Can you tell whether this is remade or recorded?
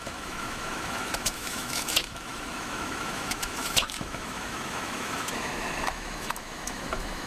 remade